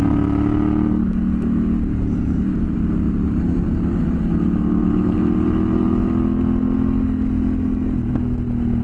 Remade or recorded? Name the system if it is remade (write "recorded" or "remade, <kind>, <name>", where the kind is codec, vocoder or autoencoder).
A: recorded